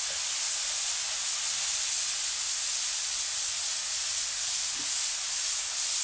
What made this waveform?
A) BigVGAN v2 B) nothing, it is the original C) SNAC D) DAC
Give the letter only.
B